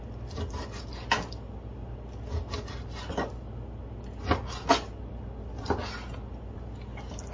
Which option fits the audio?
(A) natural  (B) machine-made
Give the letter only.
A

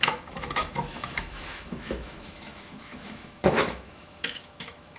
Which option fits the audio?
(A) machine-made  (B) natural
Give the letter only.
A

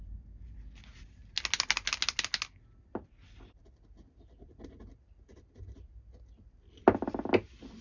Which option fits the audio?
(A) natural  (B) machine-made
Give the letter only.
A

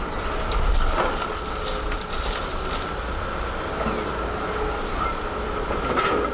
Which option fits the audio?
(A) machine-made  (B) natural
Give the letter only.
B